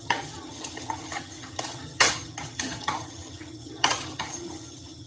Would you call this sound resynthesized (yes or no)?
yes